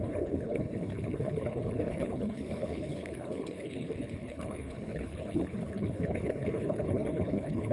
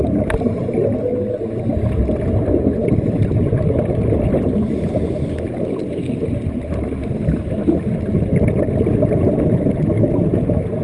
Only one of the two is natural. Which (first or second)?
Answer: second